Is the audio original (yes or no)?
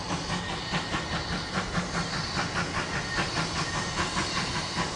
yes